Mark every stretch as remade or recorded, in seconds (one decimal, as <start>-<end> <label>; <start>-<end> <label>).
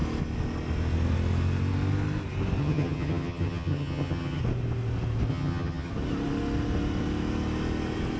0.0-2.6 recorded; 2.6-4.4 remade; 4.4-5.3 recorded; 5.3-5.9 remade; 5.9-8.2 recorded